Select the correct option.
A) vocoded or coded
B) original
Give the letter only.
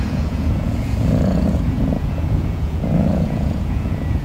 A